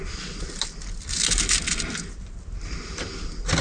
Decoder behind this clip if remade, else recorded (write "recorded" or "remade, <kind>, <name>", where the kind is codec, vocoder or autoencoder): recorded